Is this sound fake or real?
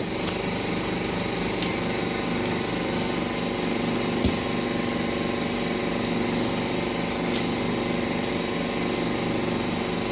real